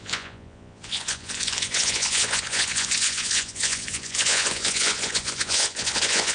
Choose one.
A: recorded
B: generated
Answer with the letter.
B